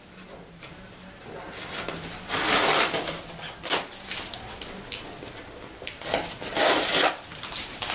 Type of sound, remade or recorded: recorded